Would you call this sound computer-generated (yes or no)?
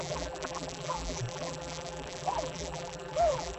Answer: yes